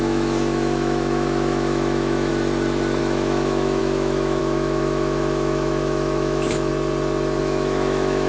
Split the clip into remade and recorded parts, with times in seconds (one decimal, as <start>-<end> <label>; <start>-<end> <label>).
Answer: 0.0-2.3 remade; 2.3-3.0 recorded; 3.0-6.7 remade; 6.7-7.4 recorded; 7.4-8.3 remade